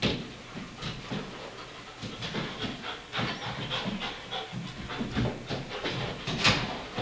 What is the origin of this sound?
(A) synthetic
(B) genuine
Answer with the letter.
B